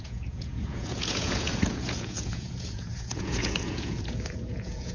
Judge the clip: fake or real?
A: fake